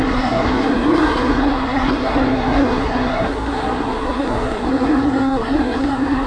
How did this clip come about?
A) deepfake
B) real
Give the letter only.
A